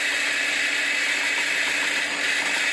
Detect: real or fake real